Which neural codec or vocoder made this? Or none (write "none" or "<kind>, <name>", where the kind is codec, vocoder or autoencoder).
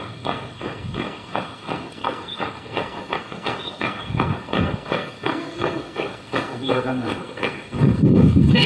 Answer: codec, SNAC